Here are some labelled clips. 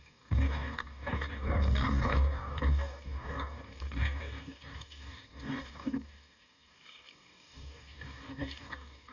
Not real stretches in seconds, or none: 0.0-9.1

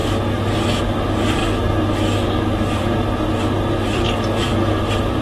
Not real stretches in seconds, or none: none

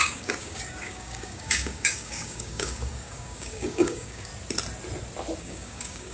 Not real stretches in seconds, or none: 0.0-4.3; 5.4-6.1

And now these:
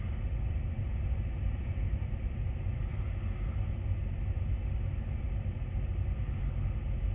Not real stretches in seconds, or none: none